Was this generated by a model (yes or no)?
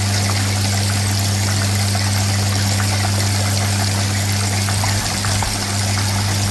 no